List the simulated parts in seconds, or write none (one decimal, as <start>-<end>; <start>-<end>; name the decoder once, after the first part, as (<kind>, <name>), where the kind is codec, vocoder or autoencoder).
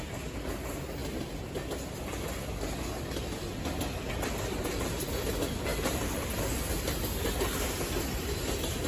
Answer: 5.7-6.4 (vocoder, BigVGAN v2)